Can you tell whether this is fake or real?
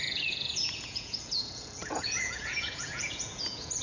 fake